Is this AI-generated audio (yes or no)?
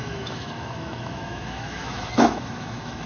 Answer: yes